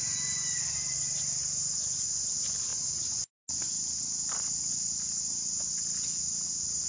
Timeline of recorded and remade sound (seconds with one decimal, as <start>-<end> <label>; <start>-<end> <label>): 0.0-6.9 recorded